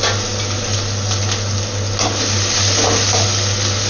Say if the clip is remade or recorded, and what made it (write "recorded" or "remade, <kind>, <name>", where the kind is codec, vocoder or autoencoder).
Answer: recorded